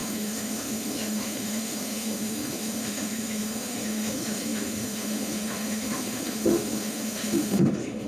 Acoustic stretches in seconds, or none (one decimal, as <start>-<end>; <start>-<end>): none